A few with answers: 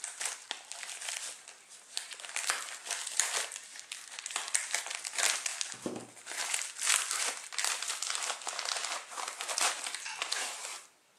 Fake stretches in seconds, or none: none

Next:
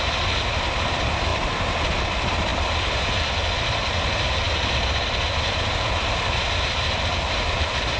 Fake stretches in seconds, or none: none

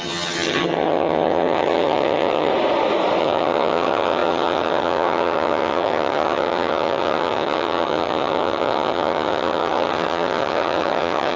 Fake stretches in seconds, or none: 0.0-2.5 (vocoder, HiFi-GAN); 3.2-11.4

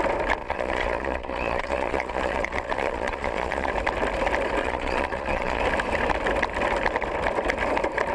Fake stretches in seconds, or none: 0.4-3.7 (vocoder, Vocos); 4.6-5.6